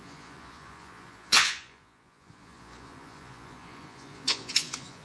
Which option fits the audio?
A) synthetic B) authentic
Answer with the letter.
A